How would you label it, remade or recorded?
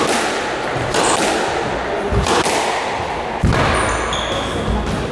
recorded